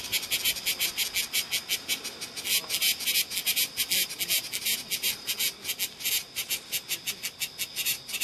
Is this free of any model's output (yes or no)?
yes